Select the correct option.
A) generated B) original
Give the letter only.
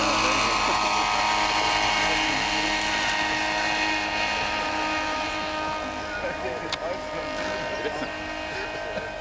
B